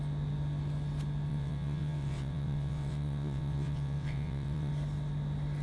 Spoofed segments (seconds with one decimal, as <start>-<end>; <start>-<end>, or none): 1.3-4.7